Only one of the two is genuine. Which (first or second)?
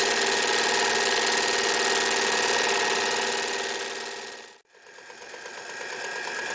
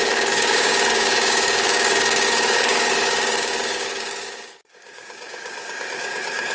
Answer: first